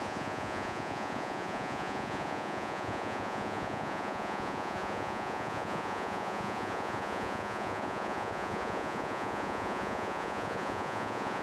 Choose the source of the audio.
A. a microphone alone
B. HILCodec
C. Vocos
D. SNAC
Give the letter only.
C